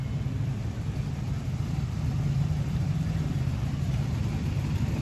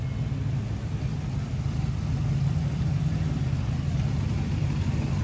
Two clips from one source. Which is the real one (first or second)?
second